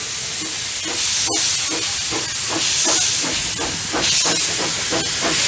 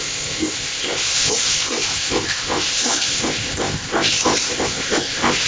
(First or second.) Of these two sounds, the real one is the first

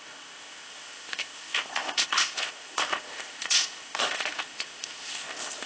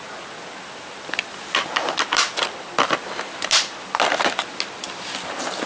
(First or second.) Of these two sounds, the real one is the second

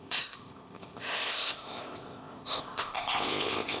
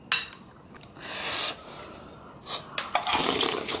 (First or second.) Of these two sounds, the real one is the second